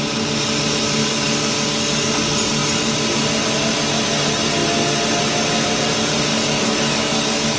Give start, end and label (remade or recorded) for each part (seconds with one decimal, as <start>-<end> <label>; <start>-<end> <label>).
0.0-1.0 recorded; 1.0-2.1 remade; 2.1-6.3 recorded; 6.3-7.6 remade